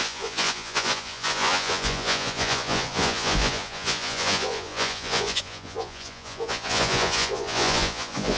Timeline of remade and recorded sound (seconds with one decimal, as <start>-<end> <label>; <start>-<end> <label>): 0.0-8.4 remade